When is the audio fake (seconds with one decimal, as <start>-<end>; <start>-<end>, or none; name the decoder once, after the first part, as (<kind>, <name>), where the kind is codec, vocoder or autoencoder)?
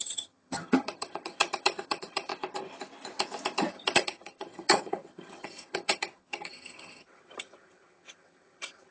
0.0-2.3 (vocoder, HiFi-GAN); 3.7-8.9